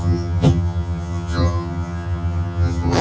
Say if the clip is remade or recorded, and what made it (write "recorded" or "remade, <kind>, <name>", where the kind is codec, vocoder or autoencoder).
remade, vocoder, HiFi-GAN